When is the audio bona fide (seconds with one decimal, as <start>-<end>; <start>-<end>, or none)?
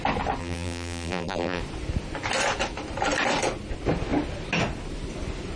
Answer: 0.0-0.4; 1.6-5.6